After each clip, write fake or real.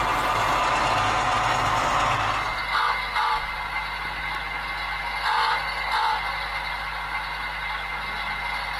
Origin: real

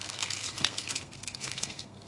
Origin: fake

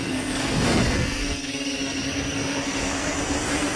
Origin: fake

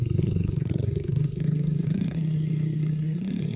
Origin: fake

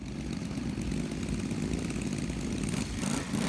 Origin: real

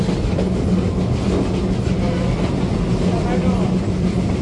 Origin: real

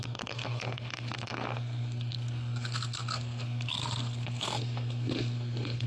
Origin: fake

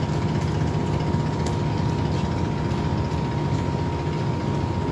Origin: real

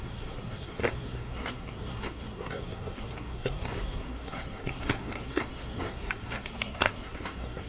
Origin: fake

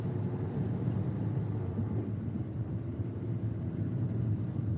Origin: real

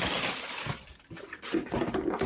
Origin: real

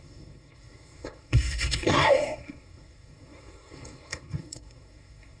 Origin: fake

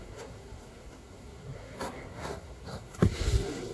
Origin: fake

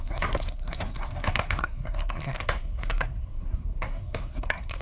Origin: fake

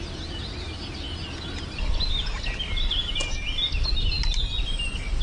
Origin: real